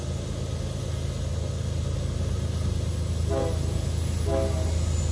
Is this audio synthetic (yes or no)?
no